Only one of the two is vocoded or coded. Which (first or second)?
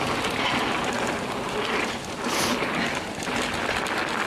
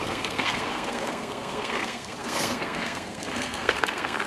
second